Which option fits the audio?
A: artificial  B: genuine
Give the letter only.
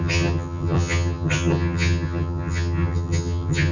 A